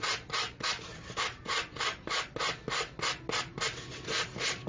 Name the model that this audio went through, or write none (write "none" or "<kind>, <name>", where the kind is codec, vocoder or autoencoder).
none